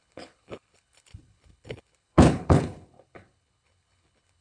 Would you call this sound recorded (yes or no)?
no